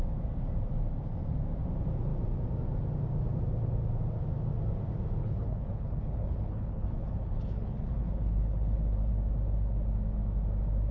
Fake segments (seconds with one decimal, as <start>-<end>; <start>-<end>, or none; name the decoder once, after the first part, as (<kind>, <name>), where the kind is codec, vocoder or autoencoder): 5.2-9.1 (codec, HILCodec)